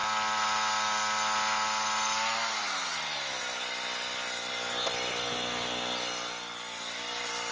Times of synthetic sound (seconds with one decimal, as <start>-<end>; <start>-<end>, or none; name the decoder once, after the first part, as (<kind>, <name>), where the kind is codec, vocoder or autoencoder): none